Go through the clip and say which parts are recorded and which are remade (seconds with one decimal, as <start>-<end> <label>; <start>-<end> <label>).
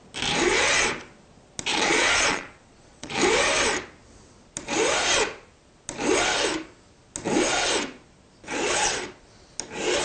0.0-1.7 recorded; 1.7-3.2 remade; 3.2-10.0 recorded